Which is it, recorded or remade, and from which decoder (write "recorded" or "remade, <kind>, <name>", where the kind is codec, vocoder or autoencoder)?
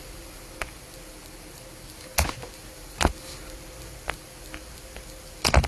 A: recorded